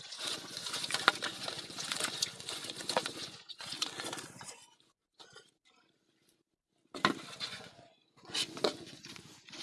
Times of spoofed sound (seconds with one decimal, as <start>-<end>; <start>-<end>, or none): 0.0-5.0; 7.4-9.6